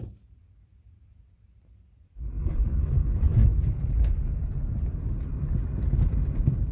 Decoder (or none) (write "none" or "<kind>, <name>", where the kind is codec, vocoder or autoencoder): none